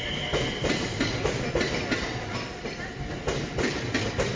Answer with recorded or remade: recorded